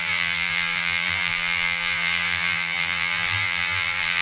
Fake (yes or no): yes